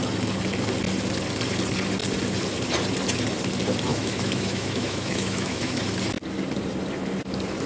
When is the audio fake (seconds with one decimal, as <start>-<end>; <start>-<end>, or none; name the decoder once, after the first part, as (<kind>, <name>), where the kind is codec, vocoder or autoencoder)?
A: 3.9-5.8 (autoencoder, DAC-VAE)